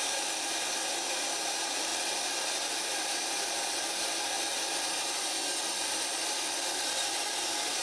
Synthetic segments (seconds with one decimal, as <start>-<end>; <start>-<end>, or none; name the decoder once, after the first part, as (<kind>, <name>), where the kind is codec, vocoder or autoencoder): none